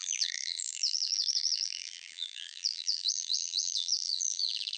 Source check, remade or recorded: remade